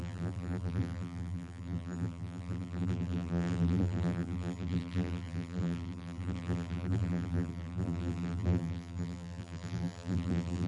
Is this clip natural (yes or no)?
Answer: no